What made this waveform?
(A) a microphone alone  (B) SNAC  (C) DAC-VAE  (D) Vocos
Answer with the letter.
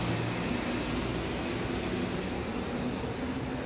A